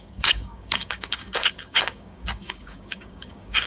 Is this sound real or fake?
fake